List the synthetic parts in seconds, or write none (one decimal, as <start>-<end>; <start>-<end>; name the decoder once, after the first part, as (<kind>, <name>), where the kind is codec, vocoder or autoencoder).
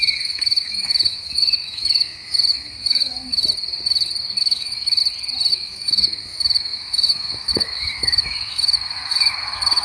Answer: 0.0-3.4 (autoencoder, DAC-VAE); 4.4-5.0; 5.5-9.8